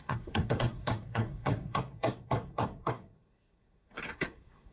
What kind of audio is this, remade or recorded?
remade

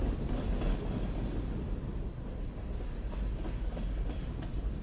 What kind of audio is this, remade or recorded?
recorded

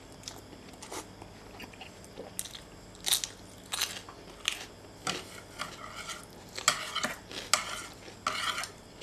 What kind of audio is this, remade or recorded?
recorded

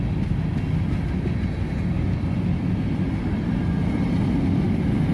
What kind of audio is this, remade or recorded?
recorded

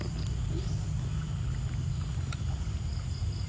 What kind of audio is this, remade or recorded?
recorded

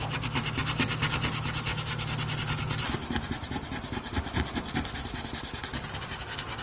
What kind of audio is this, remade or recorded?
recorded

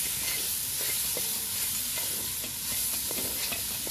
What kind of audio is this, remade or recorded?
recorded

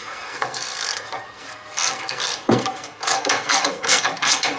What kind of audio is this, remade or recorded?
remade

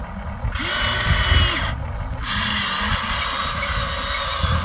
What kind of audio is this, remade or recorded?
recorded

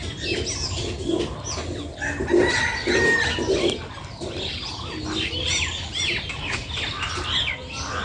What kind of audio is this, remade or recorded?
recorded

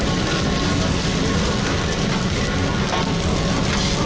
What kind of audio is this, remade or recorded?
recorded